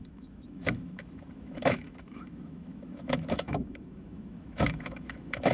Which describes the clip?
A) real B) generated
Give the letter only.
B